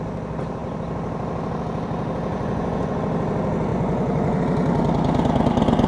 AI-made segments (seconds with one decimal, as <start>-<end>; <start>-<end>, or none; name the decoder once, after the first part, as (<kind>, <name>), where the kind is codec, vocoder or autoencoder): 2.3-3.0 (vocoder, Vocos); 3.7-4.4